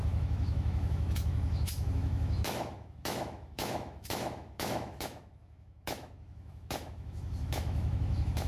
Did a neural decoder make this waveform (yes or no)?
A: yes